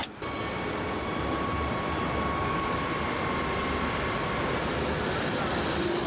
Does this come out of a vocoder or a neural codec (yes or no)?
no